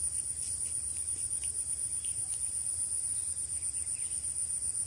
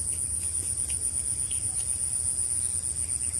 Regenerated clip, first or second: first